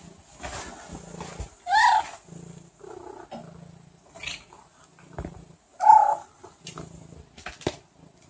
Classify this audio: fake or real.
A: real